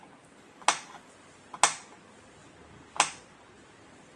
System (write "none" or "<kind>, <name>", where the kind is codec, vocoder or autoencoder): none